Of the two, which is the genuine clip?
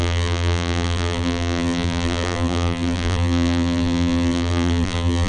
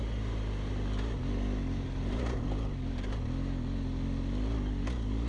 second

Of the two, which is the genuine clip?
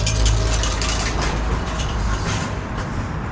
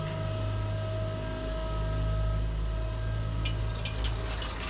second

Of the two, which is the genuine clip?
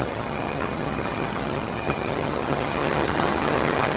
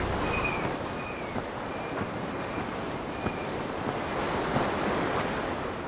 second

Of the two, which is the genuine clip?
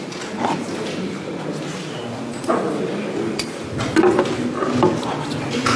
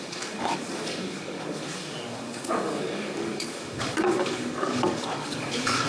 first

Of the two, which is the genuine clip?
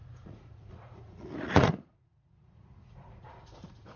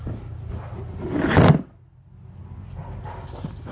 second